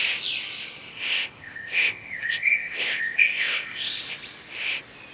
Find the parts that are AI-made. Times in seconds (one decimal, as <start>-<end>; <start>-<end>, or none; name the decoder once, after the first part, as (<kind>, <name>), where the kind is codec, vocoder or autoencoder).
0.9-4.0 (codec, ZipCodec)